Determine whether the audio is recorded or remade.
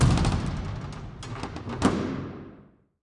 recorded